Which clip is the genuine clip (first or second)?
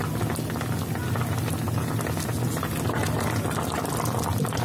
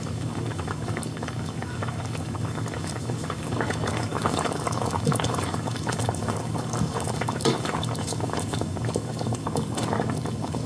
first